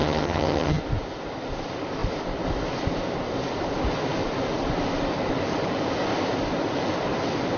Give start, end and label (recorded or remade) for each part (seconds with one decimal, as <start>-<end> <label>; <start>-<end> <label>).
0.0-0.8 remade; 0.8-7.6 recorded